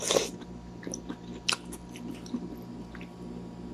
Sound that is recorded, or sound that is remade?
recorded